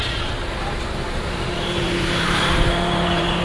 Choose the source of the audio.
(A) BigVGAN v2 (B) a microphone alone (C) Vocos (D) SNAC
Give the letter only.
A